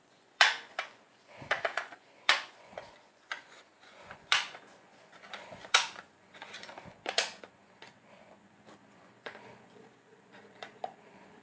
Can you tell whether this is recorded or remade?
remade